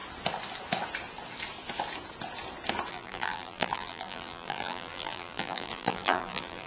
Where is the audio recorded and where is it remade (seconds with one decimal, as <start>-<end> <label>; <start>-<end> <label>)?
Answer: 0.0-2.9 recorded; 2.9-6.7 remade